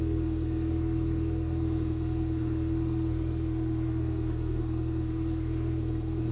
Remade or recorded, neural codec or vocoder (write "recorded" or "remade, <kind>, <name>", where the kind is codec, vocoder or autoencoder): remade, codec, SNAC